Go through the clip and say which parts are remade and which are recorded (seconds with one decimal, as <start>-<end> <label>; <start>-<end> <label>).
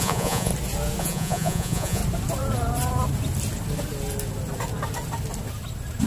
0.0-0.5 remade; 0.5-1.0 recorded; 1.0-2.0 remade; 2.0-6.1 recorded